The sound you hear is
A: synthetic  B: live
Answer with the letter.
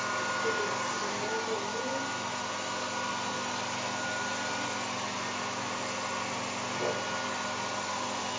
B